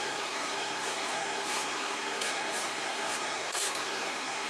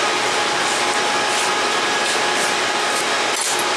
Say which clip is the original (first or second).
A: second